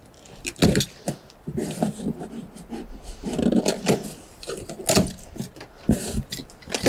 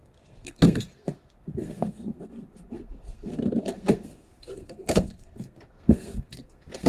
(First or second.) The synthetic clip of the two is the second